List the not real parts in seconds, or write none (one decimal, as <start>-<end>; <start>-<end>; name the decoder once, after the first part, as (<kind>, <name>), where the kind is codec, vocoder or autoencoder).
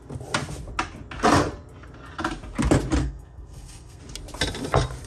3.0-4.0 (codec, SNAC)